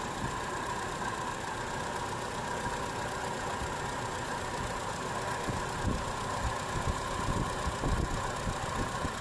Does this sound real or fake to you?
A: real